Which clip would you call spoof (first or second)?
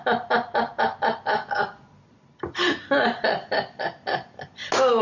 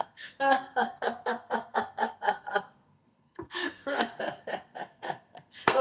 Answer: second